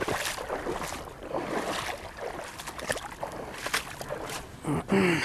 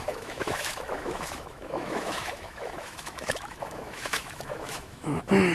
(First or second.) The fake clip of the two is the second